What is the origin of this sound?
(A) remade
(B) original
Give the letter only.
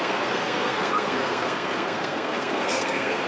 A